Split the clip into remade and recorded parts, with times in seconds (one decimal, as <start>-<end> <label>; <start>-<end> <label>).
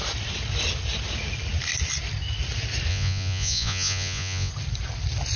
0.0-2.9 recorded; 2.9-4.5 remade; 4.5-5.4 recorded